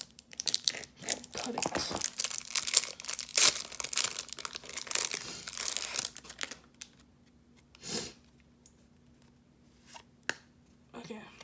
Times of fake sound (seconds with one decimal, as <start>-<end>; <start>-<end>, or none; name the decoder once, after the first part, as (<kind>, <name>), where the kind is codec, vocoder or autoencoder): 0.0-0.7 (vocoder, BigVGAN v2)